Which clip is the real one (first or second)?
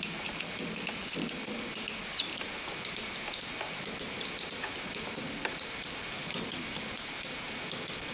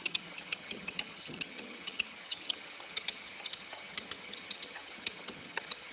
first